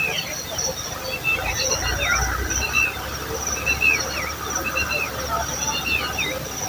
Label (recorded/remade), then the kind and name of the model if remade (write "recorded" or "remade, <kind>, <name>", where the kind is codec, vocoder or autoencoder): recorded